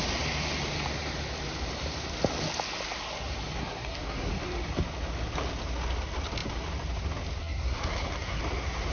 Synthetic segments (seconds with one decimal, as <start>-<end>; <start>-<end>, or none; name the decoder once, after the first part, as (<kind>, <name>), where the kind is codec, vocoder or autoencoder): 3.6-4.3 (codec, SNAC); 7.4-8.4